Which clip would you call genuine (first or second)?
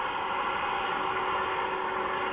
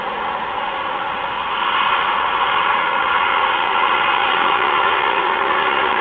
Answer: first